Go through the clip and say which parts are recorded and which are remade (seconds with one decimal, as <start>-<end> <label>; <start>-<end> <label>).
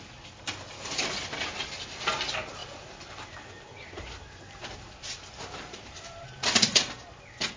0.0-2.6 recorded; 2.6-6.2 remade; 6.2-7.6 recorded